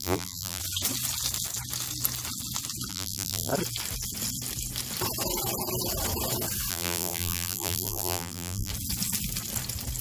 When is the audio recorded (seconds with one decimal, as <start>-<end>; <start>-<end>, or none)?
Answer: 0.6-2.9; 3.5-6.7; 8.7-10.0

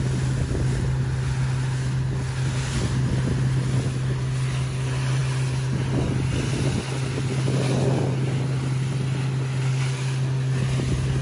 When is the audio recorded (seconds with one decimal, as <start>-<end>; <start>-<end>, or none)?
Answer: 0.0-11.2

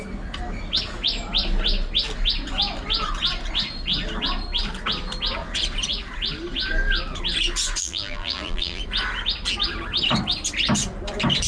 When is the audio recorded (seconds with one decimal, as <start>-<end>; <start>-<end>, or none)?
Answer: 0.0-7.8; 8.8-11.5